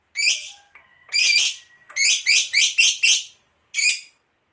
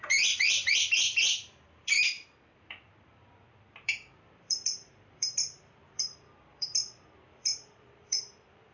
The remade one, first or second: second